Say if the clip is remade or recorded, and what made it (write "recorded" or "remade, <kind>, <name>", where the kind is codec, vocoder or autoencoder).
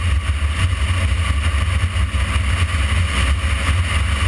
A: recorded